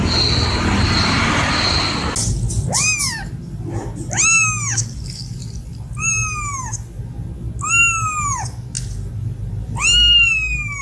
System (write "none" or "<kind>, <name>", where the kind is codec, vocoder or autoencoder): none